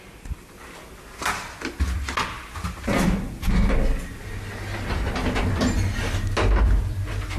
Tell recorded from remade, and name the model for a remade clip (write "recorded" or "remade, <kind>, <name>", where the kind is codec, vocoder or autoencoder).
recorded